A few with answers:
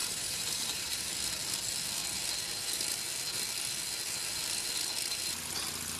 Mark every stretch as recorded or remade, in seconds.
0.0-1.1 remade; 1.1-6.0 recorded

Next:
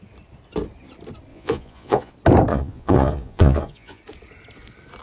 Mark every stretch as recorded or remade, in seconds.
0.0-1.3 recorded; 1.3-2.1 remade; 2.1-2.5 recorded; 2.5-4.0 remade; 4.0-5.0 recorded

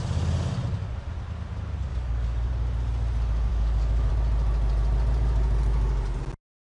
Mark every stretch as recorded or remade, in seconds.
0.0-1.9 recorded; 1.9-2.5 remade; 2.5-3.5 recorded; 3.5-4.1 remade; 4.1-6.8 recorded

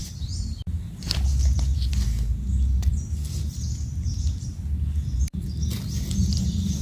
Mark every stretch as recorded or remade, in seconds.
0.0-1.9 remade; 1.9-6.8 recorded

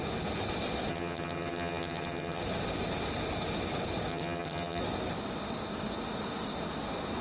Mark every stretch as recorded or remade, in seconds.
0.0-0.9 recorded; 0.9-2.4 remade; 2.4-4.1 recorded; 4.1-4.8 remade; 4.8-7.2 recorded

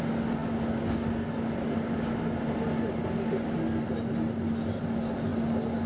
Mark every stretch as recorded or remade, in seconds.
0.0-5.9 recorded

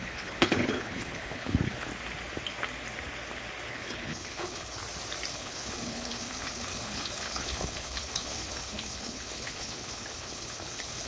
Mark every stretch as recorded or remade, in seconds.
0.0-1.9 remade; 1.9-3.7 recorded; 3.7-4.8 remade; 4.8-5.3 recorded; 5.3-11.1 remade